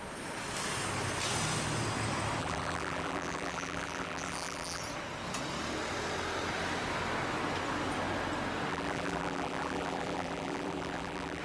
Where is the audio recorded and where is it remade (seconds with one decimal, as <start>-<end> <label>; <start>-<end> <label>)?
0.0-2.4 recorded; 2.4-4.8 remade; 4.8-8.7 recorded; 8.7-11.4 remade